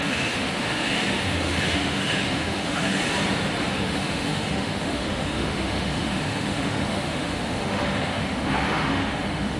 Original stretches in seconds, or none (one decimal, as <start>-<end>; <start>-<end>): 3.0-3.7